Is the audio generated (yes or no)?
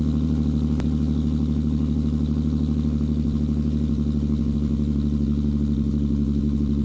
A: no